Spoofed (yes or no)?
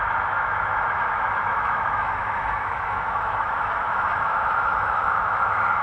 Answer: yes